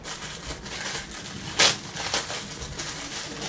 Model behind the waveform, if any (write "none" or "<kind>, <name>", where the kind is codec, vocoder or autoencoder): none